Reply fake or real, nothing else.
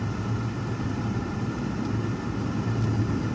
real